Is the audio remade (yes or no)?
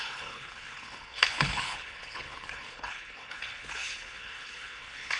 yes